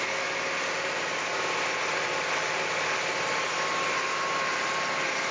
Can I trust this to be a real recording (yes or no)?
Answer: yes